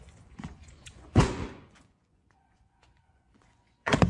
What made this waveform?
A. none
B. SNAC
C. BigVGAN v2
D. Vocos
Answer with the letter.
D